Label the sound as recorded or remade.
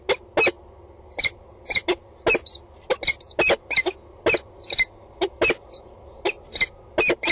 recorded